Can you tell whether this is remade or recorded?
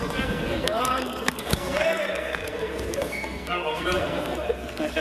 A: remade